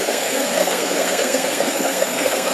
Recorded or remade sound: remade